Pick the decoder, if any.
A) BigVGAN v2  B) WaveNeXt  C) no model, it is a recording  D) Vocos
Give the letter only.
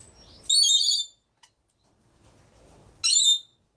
C